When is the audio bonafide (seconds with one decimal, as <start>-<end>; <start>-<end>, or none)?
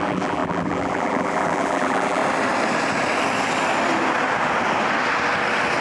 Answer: 2.2-5.8